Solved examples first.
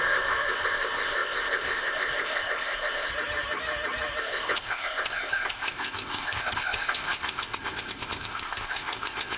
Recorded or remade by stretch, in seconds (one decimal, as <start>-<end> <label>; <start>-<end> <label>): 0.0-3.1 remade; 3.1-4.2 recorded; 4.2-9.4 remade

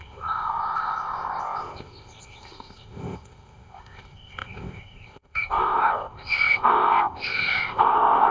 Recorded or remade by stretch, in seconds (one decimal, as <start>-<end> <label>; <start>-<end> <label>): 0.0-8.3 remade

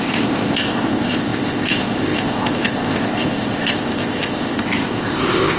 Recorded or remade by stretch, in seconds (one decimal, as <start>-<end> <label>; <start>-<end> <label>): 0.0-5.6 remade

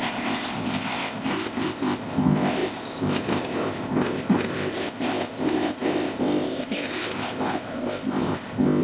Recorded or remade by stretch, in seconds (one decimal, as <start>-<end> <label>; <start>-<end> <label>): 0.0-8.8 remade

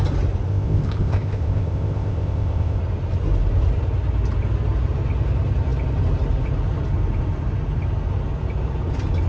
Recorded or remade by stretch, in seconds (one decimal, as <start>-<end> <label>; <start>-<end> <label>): 0.0-0.5 recorded; 0.5-2.8 remade; 2.8-9.3 recorded

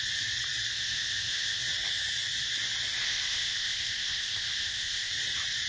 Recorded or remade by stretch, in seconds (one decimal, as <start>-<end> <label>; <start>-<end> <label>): 0.0-0.7 recorded; 0.7-1.6 remade; 1.6-3.0 recorded; 3.0-5.1 remade; 5.1-5.7 recorded